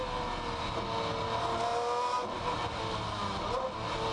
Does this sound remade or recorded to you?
recorded